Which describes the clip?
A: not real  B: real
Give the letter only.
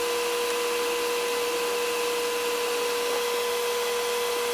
B